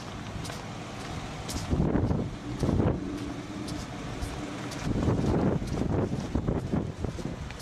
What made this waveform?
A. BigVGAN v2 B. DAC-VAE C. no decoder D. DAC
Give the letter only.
C